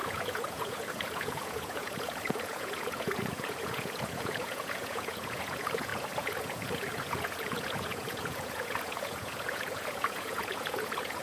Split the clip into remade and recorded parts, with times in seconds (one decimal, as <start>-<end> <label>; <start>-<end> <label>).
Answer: 0.0-11.2 remade